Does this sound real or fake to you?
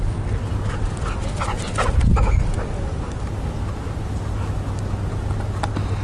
real